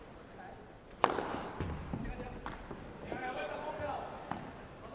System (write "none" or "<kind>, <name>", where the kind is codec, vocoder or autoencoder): none